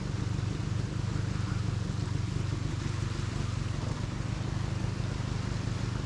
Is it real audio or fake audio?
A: real